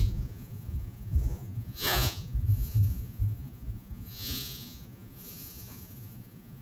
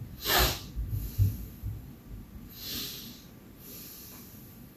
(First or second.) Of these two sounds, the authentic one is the second